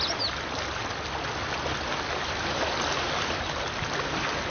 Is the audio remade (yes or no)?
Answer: no